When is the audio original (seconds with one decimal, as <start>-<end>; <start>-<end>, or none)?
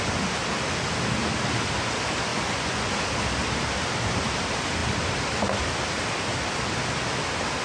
0.0-2.3; 2.9-7.6